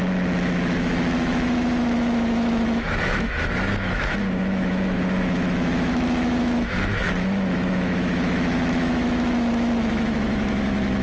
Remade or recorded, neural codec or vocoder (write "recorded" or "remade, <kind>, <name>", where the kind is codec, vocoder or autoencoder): remade, autoencoder, DAC-VAE